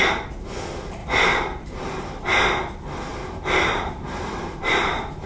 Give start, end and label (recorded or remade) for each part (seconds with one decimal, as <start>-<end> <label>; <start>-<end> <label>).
0.0-1.0 recorded; 1.0-2.2 remade; 2.2-3.1 recorded; 3.1-4.7 remade; 4.7-5.3 recorded